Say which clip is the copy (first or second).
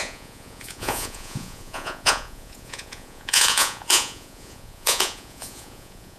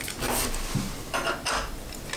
first